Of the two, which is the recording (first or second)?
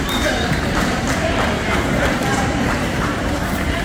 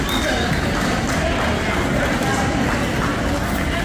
second